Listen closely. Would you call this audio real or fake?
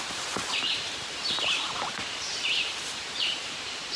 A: fake